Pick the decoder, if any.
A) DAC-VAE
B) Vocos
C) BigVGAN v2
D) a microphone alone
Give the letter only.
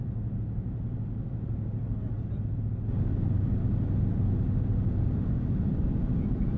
D